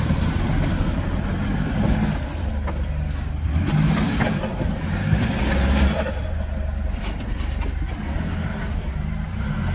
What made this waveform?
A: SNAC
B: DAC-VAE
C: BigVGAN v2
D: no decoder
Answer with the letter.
D